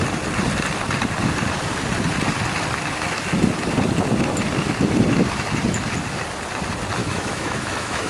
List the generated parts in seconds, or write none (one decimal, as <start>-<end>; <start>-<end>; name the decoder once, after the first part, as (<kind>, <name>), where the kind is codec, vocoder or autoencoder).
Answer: 7.0-8.1 (autoencoder, DAC-VAE)